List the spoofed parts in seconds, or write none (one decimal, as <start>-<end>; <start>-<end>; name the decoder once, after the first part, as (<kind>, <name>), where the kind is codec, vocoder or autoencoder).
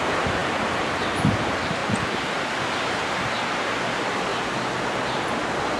none